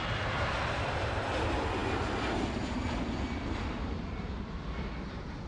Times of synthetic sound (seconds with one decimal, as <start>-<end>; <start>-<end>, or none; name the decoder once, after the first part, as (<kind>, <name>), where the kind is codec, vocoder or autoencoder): none

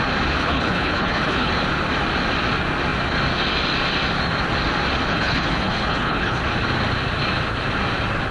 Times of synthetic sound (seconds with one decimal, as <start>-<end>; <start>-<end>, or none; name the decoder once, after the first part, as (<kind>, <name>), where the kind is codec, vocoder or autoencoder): 0.4-1.5 (codec, HILCodec); 5.1-6.4

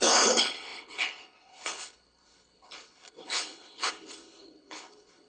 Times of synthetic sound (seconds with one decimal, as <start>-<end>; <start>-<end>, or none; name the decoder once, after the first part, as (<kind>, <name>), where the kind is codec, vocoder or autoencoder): 0.0-5.3 (codec, HILCodec)

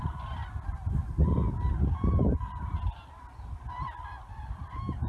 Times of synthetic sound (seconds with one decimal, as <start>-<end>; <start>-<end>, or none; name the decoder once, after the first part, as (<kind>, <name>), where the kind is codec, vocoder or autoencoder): none

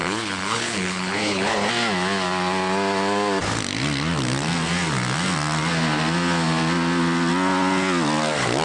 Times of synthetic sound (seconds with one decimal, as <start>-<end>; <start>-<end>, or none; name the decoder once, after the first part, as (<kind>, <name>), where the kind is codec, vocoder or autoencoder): 0.0-1.7 (codec, HILCodec)

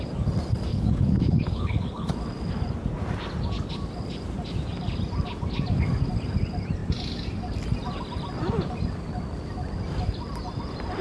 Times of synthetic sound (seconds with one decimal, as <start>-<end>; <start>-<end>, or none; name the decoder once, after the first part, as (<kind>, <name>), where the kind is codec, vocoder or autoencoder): 0.7-2.1 (codec, HILCodec)

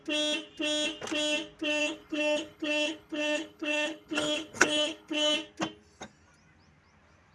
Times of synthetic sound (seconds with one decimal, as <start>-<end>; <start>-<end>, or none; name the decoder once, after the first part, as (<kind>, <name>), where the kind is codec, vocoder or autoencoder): 1.8-5.3 (codec, HILCodec)

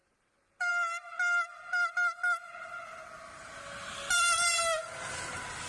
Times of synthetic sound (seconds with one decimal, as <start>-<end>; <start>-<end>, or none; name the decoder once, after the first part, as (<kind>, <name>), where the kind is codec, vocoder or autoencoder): none